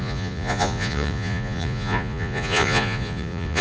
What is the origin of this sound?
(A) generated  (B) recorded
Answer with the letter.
A